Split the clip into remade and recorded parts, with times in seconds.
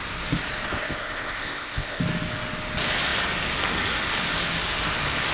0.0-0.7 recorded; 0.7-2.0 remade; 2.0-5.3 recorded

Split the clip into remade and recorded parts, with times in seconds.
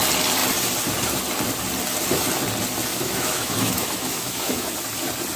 0.0-2.9 recorded; 2.9-4.7 remade; 4.7-5.4 recorded